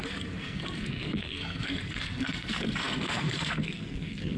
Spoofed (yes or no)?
yes